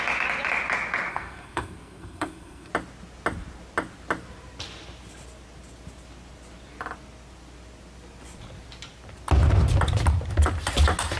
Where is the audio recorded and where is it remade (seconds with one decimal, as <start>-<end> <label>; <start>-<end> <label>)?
0.0-1.1 recorded; 1.1-2.7 remade; 2.7-11.2 recorded

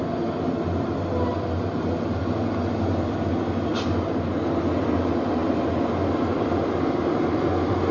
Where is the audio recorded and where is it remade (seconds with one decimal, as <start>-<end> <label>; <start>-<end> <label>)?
0.0-7.9 recorded

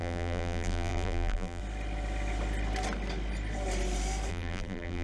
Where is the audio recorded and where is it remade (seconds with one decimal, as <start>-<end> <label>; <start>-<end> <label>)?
0.0-1.6 remade; 1.6-4.3 recorded; 4.3-5.0 remade